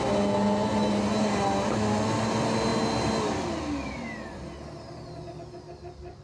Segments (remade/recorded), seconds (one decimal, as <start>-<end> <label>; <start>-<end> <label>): 0.0-6.2 recorded

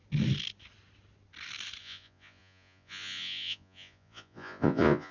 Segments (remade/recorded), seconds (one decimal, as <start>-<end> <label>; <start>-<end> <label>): 0.0-1.8 recorded; 1.8-5.1 remade

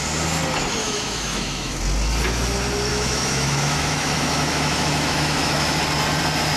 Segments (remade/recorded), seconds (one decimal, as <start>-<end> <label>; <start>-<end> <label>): 0.0-0.8 recorded; 0.8-1.8 remade; 1.8-2.9 recorded; 2.9-5.8 remade; 5.8-6.6 recorded

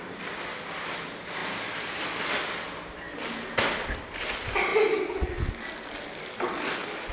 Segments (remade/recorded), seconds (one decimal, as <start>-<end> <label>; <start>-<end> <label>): 0.0-7.1 recorded

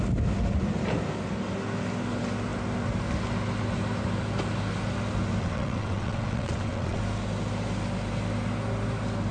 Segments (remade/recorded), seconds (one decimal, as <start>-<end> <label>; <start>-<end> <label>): 0.0-5.4 recorded; 5.4-7.0 remade; 7.0-9.3 recorded

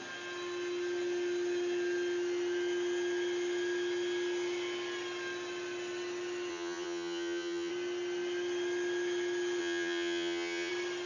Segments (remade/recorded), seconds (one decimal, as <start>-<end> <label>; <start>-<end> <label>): 0.0-6.5 recorded; 6.5-7.7 remade; 7.7-9.6 recorded; 9.6-10.7 remade; 10.7-11.1 recorded

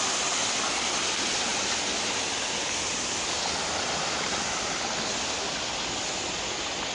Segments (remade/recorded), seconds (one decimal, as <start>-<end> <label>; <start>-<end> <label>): 0.0-6.9 recorded